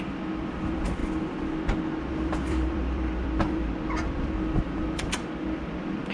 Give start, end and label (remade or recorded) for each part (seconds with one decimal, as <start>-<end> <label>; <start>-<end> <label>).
0.0-1.0 remade; 1.0-2.1 recorded; 2.1-6.1 remade